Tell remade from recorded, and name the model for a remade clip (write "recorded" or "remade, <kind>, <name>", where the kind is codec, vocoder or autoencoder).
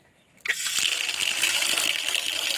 recorded